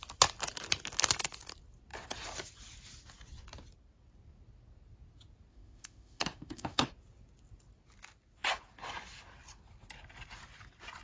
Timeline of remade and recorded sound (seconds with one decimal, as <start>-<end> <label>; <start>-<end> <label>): 0.0-5.5 recorded; 5.5-6.9 remade; 6.9-11.0 recorded